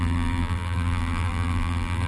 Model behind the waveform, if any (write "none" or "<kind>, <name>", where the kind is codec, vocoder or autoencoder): vocoder, BigVGAN v2